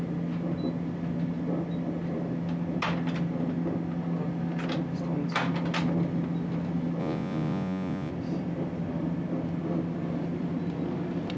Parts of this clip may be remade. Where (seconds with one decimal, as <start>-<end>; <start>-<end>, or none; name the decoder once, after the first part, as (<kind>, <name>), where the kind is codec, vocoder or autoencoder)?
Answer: 7.0-8.1 (vocoder, Vocos)